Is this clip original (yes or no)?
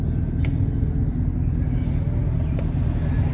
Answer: yes